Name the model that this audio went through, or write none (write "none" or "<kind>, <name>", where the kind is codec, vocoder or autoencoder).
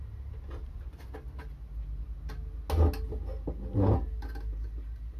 none